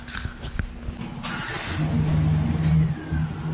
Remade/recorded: recorded